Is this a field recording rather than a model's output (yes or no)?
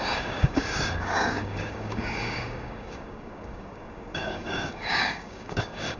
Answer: no